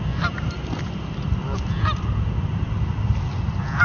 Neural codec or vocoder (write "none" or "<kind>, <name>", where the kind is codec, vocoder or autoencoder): none